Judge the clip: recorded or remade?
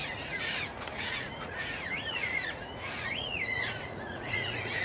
remade